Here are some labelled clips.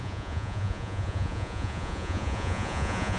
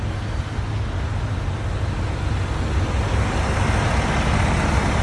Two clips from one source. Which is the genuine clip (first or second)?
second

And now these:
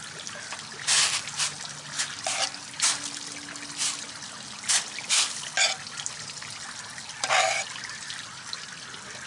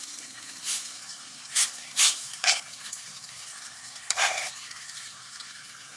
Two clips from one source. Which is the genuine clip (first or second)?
first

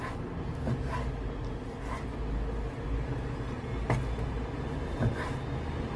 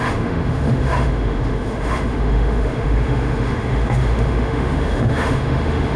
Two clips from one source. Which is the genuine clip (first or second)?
first